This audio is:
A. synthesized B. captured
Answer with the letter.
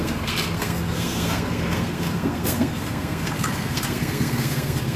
A